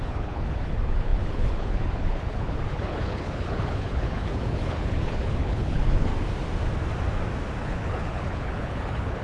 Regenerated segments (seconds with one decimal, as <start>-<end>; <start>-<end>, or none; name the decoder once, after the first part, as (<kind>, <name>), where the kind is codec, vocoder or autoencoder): 0.0-6.1 (codec, HILCodec); 7.6-9.2